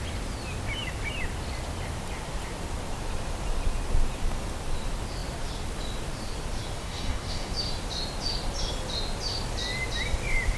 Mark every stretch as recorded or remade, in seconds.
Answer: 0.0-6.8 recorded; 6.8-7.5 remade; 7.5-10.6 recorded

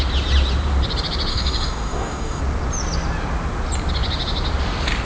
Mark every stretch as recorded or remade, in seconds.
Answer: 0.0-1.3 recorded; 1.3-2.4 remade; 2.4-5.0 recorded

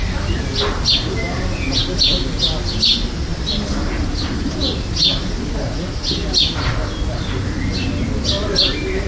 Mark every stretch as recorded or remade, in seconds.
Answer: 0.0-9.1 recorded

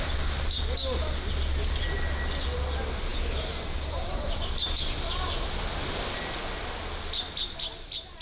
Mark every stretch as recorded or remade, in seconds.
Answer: 0.0-8.2 recorded